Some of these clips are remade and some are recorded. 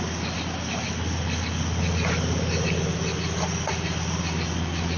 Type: recorded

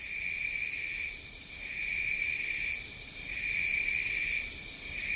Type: recorded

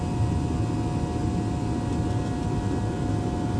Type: recorded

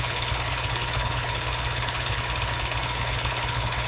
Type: remade